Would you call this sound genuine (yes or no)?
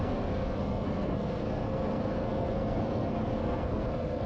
no